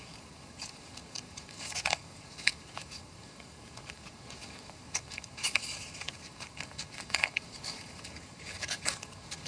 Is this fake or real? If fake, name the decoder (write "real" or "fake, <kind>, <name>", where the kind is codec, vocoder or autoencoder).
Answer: fake, codec, DAC